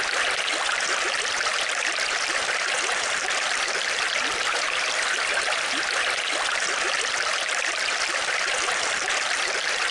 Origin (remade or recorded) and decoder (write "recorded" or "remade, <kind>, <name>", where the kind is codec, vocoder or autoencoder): remade, vocoder, BigVGAN v2